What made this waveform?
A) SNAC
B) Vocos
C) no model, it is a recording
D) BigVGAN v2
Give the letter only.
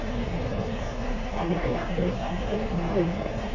A